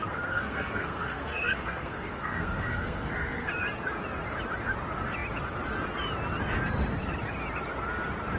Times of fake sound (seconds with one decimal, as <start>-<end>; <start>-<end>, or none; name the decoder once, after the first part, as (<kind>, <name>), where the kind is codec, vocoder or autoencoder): 0.0-3.5 (codec, SNAC)